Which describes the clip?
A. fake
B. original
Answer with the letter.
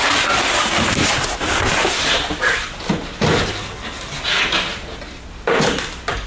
B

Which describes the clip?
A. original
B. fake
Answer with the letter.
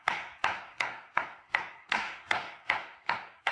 B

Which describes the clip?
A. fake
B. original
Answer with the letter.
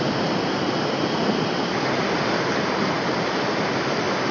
B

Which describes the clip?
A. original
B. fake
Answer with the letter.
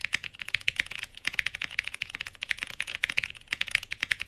B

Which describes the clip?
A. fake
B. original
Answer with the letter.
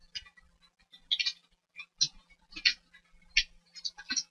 B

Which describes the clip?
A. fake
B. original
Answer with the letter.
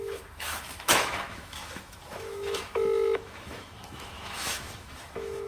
A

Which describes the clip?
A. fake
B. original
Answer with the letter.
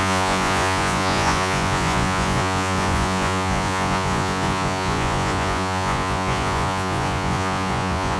A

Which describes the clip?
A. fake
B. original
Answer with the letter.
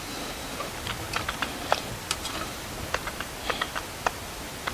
B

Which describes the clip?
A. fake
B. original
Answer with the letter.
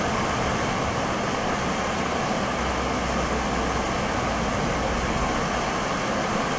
B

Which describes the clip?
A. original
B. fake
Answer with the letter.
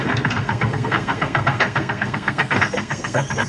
B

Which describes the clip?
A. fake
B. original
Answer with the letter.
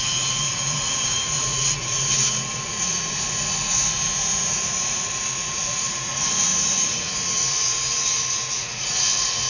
A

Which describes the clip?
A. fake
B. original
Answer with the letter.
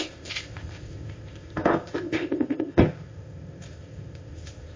A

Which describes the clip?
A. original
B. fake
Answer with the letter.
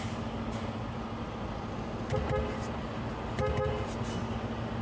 A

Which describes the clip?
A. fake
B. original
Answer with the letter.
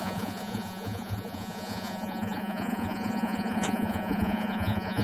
A